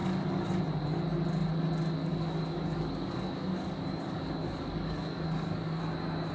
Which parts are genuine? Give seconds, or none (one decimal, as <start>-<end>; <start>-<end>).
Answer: 0.6-2.0; 5.8-6.3

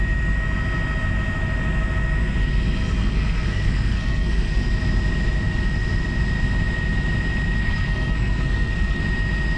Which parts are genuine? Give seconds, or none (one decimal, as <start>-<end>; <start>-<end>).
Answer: 0.0-3.0; 4.7-7.6; 9.0-9.6

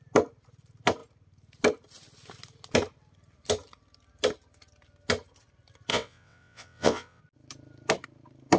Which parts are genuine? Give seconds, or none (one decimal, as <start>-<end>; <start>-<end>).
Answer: 0.0-5.9; 7.2-8.6

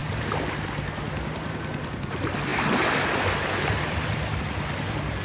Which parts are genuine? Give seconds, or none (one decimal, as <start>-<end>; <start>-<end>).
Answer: 0.0-5.2

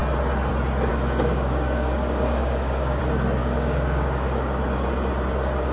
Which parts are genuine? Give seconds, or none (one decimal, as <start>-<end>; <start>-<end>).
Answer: 0.0-0.9; 3.0-3.4; 4.6-5.7

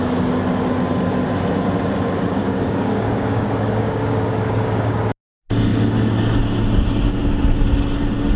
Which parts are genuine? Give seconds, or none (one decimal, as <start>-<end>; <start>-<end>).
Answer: 0.0-2.4; 5.0-8.4